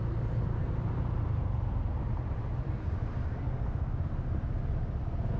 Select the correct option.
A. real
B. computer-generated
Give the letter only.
A